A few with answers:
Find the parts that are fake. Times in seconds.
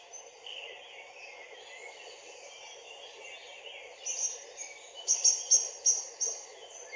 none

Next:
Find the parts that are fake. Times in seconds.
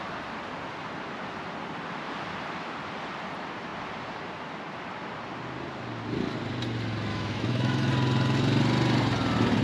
7.1-7.9 (autoencoder, DAC-VAE)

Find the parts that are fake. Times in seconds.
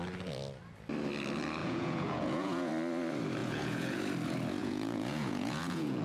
1.6-2.7 (vocoder, Vocos); 3.4-4.0; 4.6-6.0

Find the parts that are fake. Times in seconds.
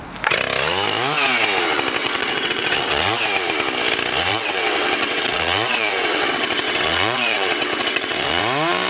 2.0-3.2 (vocoder, WaveNeXt); 4.3-8.4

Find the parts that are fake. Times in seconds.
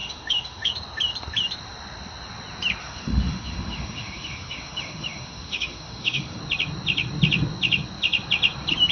0.0-0.7 (autoencoder, DAC-VAE); 2.8-6.4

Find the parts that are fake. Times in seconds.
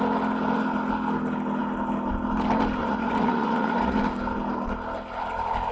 2.8-4.0 (vocoder, Vocos)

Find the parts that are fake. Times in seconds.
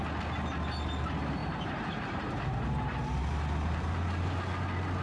1.4-4.4 (vocoder, BigVGAN v2)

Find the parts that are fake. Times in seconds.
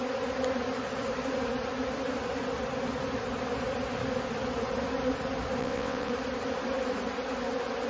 5.6-6.1 (vocoder, WaveNeXt)